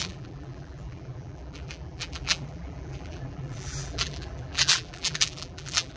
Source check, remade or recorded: remade